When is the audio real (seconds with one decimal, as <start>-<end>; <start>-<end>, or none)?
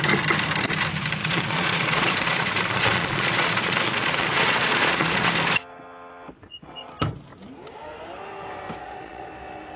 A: 0.0-1.2; 5.3-6.4; 6.9-8.8; 9.3-9.8